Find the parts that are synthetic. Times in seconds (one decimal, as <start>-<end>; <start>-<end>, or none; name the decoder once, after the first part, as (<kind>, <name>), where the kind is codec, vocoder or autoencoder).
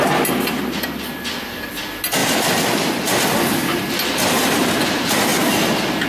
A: none